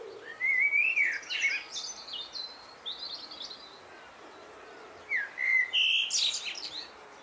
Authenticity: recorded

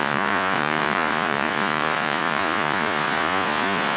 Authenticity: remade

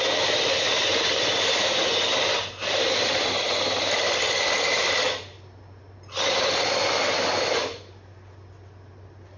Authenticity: recorded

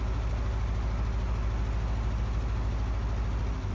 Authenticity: recorded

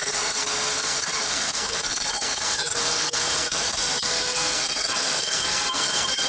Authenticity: remade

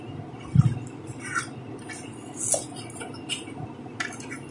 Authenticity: recorded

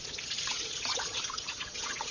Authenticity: remade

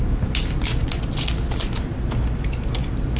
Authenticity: recorded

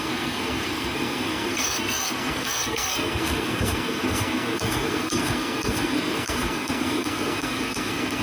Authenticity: remade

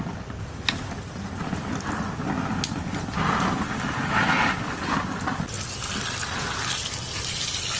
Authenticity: recorded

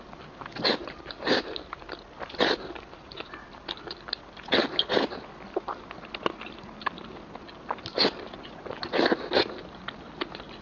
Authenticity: recorded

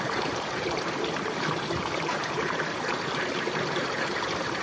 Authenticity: remade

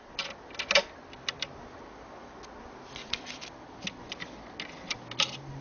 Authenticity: recorded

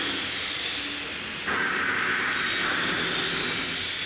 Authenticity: recorded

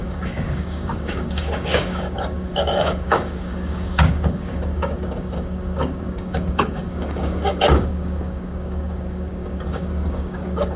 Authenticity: remade